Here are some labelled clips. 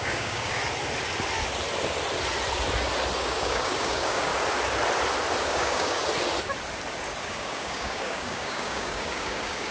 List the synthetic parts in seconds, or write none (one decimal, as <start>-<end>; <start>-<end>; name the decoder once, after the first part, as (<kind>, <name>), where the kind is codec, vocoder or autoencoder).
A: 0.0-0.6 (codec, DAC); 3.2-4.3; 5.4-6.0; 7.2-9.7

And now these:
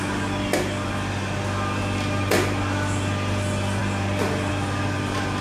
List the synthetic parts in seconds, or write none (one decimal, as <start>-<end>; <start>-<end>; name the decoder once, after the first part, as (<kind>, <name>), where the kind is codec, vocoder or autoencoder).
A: none

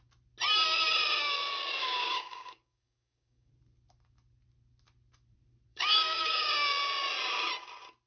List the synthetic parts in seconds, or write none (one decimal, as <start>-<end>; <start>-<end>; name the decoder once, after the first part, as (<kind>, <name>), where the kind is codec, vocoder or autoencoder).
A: 1.8-3.5 (codec, DAC); 5.7-6.5